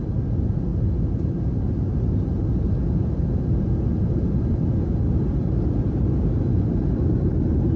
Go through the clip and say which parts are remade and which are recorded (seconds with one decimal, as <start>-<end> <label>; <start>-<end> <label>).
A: 0.0-0.7 recorded; 0.7-2.6 remade; 2.6-7.8 recorded